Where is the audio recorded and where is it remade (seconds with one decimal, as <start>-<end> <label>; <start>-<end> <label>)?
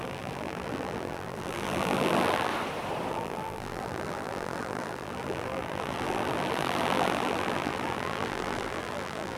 0.0-2.5 remade; 2.5-3.1 recorded; 3.1-9.4 remade